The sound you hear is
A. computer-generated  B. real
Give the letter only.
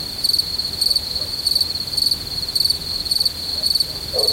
B